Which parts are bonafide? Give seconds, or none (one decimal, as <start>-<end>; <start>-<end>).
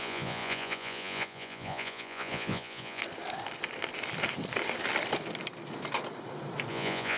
3.0-6.7